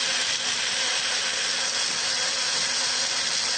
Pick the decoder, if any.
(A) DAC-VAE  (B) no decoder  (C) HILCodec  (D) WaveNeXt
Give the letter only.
B